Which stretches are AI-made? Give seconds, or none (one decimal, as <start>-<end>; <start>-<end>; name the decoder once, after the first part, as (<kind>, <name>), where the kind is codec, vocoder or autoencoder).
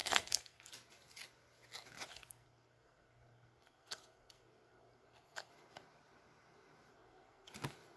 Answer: 0.0-0.7 (codec, SNAC); 2.1-5.5; 6.9-7.5